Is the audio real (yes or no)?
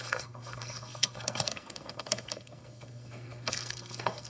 no